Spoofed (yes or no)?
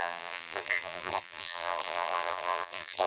yes